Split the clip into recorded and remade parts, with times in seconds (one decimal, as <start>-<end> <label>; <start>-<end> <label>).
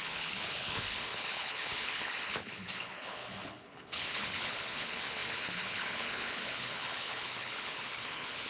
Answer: 0.0-8.5 remade